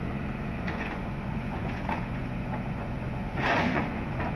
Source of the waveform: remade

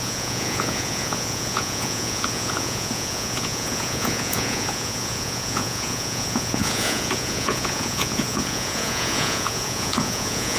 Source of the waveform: remade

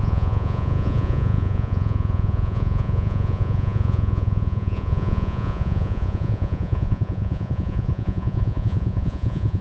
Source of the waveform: remade